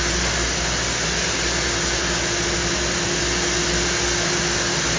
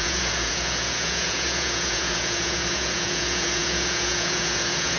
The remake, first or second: second